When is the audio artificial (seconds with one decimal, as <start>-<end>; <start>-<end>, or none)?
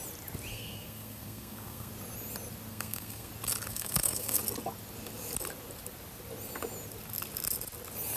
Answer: 0.5-1.9; 2.7-3.3; 3.7-4.4